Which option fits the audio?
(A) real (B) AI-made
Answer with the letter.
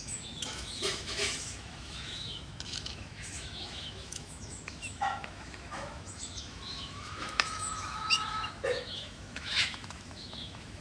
B